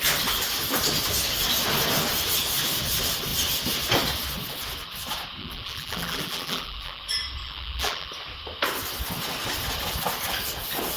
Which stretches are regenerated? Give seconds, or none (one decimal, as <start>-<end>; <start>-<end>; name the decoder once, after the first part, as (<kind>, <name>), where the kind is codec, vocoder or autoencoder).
5.4-7.0 (vocoder, BigVGAN v2); 7.4-8.1